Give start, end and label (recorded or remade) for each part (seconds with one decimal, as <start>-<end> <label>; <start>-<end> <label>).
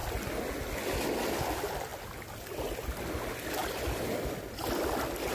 0.0-5.3 recorded